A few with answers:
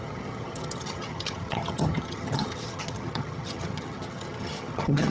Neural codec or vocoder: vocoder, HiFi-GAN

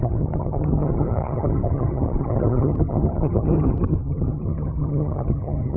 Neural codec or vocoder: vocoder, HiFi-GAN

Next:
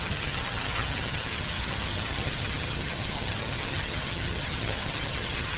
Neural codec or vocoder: vocoder, HiFi-GAN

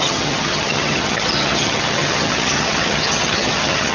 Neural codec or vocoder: vocoder, HiFi-GAN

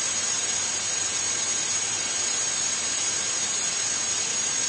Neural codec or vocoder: none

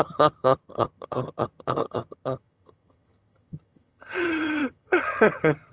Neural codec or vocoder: vocoder, HiFi-GAN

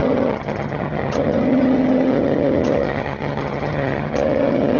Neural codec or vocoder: vocoder, HiFi-GAN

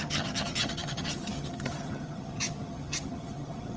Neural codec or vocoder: vocoder, HiFi-GAN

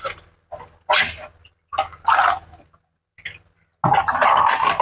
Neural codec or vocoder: none